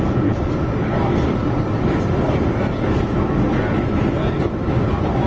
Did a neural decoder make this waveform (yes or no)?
no